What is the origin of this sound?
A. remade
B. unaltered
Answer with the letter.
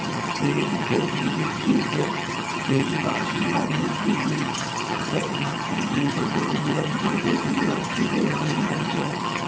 A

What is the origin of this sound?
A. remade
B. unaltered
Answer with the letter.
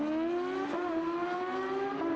B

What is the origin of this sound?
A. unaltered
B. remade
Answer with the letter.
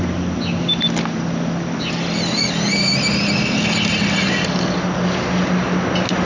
A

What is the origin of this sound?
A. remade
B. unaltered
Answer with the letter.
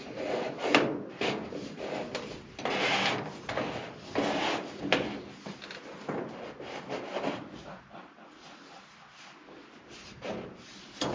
B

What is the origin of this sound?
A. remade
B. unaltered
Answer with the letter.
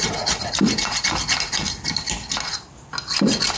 B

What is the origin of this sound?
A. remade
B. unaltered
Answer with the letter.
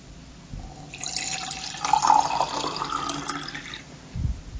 B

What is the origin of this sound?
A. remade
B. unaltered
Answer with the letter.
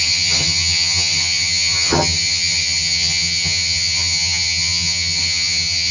A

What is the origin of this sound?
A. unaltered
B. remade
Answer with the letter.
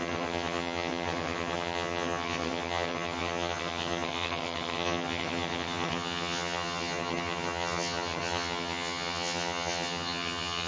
B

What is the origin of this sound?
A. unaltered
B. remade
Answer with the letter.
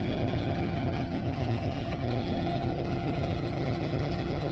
B